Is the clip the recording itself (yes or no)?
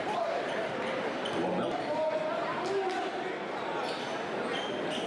yes